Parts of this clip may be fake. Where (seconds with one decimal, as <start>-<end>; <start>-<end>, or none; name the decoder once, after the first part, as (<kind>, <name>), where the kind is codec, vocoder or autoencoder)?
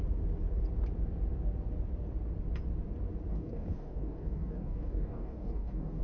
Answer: 3.3-6.0 (codec, DAC)